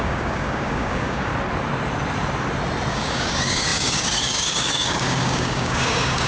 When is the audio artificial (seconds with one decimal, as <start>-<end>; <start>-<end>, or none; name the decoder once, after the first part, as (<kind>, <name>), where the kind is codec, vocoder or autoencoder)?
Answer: 0.0-1.3 (codec, DAC); 2.9-6.3